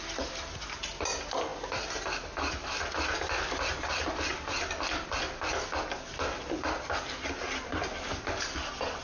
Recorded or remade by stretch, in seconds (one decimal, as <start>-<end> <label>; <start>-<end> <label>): 0.0-9.0 recorded